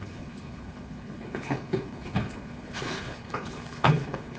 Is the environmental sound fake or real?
fake